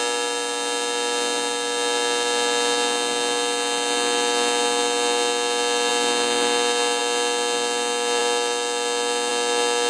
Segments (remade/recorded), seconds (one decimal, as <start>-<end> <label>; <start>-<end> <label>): 0.0-9.9 recorded